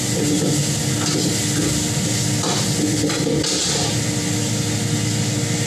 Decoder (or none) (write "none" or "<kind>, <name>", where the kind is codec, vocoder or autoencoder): none